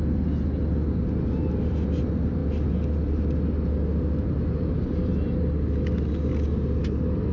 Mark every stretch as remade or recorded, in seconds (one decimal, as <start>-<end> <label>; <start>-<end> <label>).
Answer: 0.0-7.3 recorded